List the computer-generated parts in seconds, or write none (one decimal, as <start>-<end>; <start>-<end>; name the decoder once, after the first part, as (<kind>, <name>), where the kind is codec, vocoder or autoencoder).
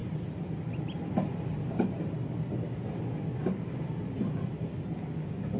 none